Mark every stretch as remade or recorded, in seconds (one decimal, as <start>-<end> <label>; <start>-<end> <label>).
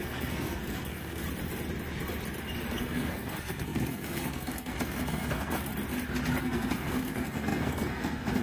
0.0-1.2 remade; 1.2-2.7 recorded; 2.7-5.7 remade; 5.7-6.4 recorded; 6.4-8.4 remade